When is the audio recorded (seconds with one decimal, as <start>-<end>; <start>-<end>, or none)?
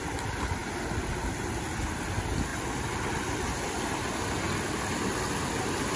0.0-6.0